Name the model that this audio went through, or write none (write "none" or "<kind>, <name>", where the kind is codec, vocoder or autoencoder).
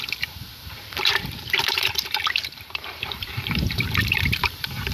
vocoder, BigVGAN v2